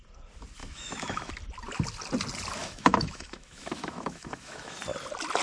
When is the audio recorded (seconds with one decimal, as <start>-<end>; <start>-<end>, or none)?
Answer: 0.0-0.6; 1.3-2.6; 4.8-5.4